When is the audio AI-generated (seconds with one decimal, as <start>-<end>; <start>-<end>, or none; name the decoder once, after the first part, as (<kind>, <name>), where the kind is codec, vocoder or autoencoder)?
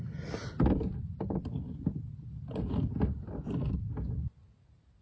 none